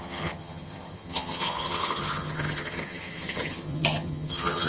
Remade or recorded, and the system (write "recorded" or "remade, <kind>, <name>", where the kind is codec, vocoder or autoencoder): remade, vocoder, HiFi-GAN